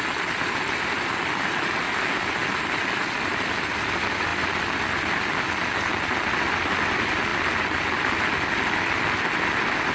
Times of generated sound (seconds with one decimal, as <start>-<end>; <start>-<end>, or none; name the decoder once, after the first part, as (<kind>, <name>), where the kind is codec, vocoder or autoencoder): none

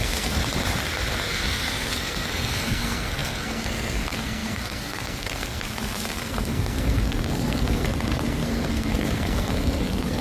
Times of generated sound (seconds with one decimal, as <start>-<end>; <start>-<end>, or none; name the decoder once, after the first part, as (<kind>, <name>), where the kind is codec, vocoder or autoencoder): 0.0-0.4 (codec, SNAC); 1.2-10.2